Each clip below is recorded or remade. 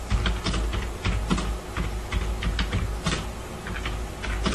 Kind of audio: recorded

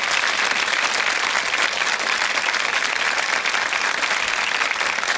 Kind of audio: recorded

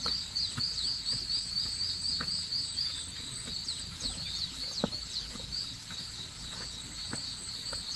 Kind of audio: remade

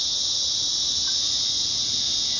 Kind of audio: recorded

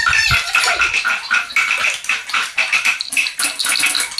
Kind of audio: recorded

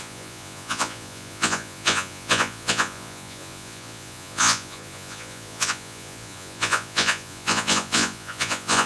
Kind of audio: remade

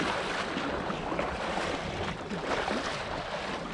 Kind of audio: recorded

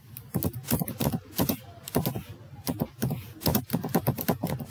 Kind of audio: recorded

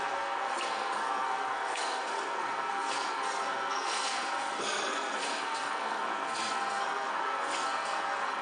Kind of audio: remade